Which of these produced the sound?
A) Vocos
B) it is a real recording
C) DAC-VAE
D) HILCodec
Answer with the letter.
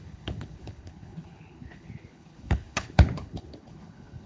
D